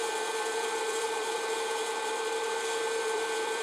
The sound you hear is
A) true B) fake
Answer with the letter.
B